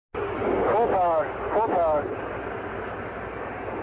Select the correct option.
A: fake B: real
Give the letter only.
B